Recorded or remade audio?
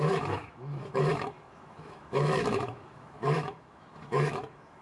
remade